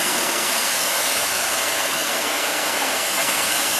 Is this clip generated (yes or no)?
yes